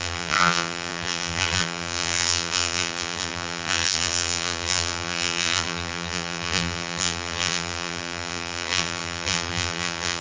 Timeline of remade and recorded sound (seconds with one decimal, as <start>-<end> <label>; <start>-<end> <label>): 0.0-10.2 remade